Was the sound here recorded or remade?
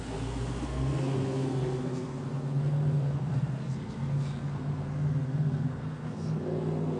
remade